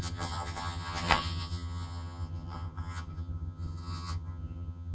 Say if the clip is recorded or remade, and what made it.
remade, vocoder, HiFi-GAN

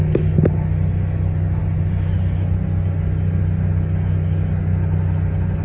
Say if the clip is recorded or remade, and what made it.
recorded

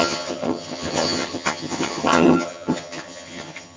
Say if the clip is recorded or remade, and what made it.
remade, vocoder, HiFi-GAN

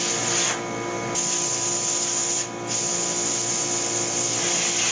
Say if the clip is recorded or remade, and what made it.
recorded